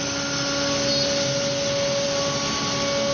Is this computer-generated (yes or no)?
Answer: no